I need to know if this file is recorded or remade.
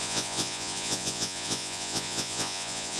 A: remade